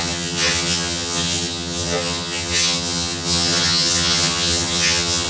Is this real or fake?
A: fake